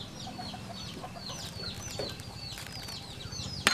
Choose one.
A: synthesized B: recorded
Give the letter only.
B